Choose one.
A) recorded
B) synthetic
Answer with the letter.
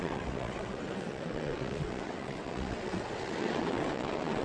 B